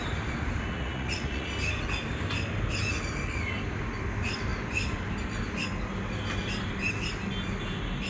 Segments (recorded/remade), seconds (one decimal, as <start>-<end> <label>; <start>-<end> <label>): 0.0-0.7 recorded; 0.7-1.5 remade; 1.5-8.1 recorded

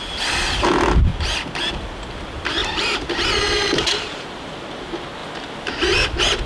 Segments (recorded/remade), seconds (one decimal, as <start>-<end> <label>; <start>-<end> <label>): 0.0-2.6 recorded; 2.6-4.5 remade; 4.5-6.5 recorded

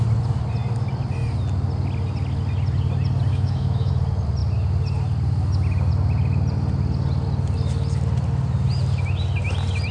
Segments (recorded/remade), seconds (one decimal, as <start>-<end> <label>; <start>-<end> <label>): 0.0-3.3 recorded; 3.3-3.9 remade; 3.9-9.9 recorded